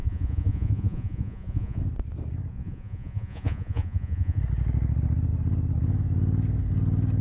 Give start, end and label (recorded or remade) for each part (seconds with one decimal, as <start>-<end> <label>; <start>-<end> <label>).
0.0-1.8 remade; 1.8-2.5 recorded; 2.5-4.4 remade; 4.4-7.2 recorded